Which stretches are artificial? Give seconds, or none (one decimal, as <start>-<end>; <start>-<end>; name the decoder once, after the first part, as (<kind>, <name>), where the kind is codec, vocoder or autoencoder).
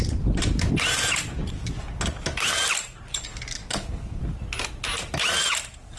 3.6-4.2 (codec, HILCodec)